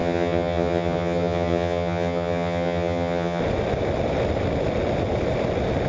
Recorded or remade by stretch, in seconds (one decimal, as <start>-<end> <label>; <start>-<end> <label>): 0.0-3.4 remade; 3.4-5.9 recorded